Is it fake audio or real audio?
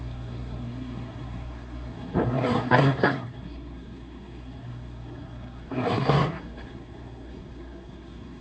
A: fake